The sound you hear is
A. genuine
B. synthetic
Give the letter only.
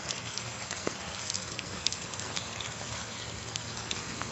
B